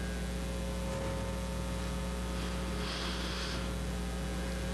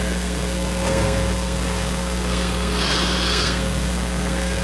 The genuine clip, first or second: first